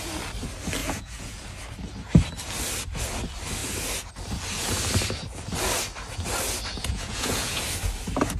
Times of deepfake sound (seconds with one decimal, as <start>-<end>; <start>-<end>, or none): 0.8-1.4; 6.7-7.6